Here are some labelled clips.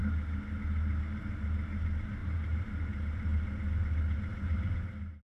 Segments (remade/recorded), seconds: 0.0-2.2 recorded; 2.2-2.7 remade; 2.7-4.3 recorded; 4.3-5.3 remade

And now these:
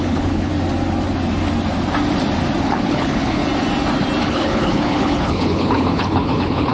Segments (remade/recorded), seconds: 0.0-0.5 remade; 0.5-2.6 recorded; 2.6-3.4 remade; 3.4-4.2 recorded; 4.2-6.7 remade